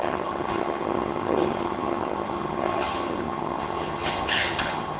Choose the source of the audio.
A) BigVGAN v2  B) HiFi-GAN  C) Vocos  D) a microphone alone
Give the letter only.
B